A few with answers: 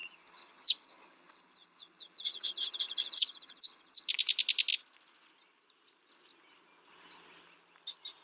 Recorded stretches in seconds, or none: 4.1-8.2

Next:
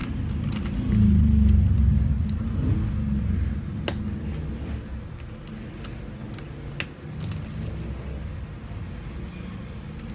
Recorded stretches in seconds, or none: 0.0-10.1

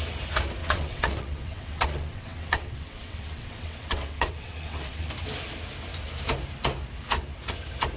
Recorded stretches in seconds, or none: 0.0-0.6; 5.1-8.0

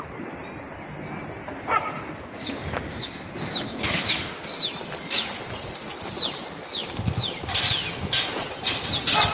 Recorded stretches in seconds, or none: 0.0-9.3

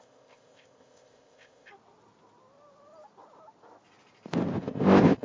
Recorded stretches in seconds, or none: 1.7-4.6

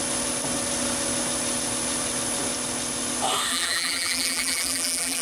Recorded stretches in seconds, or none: 0.0-3.5

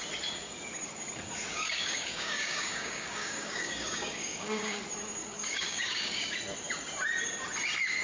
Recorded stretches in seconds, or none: 0.0-1.5; 4.8-5.2; 6.3-8.0